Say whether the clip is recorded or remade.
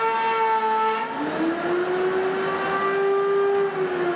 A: recorded